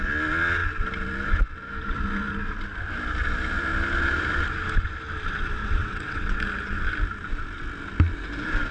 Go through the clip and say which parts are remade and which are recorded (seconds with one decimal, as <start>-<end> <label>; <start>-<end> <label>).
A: 0.0-5.6 recorded; 5.6-6.4 remade; 6.4-8.7 recorded